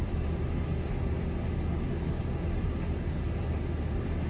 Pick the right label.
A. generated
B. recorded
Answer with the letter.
B